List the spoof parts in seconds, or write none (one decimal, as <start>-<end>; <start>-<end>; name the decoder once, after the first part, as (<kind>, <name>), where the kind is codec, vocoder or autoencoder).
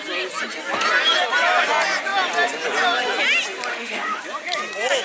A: 3.7-4.2 (autoencoder, DAC-VAE)